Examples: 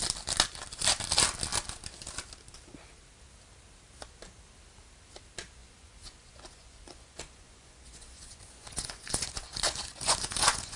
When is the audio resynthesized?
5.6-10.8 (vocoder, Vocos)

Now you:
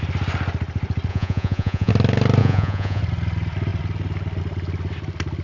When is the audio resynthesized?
1.1-1.9 (vocoder, Vocos); 2.4-3.0

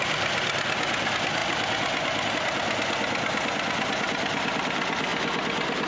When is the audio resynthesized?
none

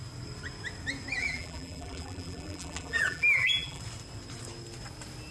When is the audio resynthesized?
1.2-3.8 (vocoder, BigVGAN v2)